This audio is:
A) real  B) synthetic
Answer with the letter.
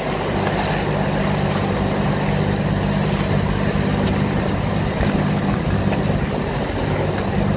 A